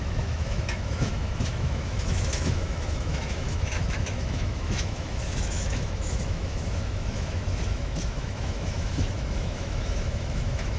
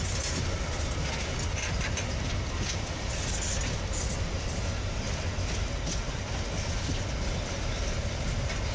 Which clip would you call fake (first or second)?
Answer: first